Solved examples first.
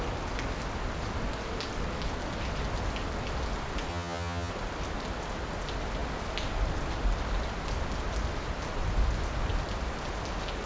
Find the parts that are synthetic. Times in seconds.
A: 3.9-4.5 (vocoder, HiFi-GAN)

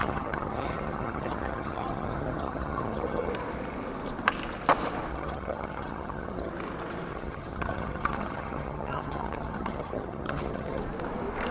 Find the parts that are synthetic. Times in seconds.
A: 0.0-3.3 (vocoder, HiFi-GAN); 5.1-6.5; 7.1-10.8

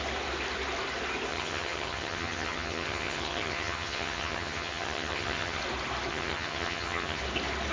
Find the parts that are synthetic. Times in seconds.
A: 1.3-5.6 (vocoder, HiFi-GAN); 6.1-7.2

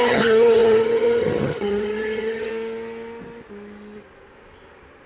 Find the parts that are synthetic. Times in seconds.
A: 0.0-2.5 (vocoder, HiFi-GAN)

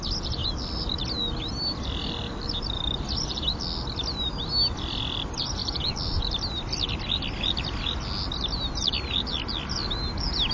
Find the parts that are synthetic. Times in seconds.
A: none